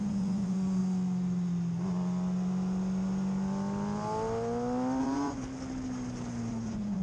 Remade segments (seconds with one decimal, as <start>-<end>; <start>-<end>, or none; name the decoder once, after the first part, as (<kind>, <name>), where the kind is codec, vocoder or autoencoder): 0.0-0.8 (vocoder, Vocos); 5.0-5.4; 6.5-7.0